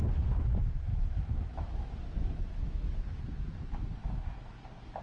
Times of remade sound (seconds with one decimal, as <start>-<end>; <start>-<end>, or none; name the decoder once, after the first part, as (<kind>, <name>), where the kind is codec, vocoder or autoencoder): 0.9-3.2 (autoencoder, DAC-VAE); 4.0-4.5